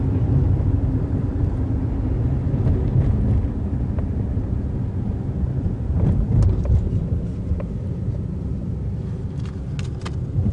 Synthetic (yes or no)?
no